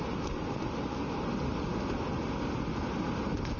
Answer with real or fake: real